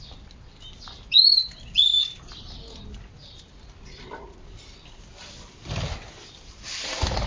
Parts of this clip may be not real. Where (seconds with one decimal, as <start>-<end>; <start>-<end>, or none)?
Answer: none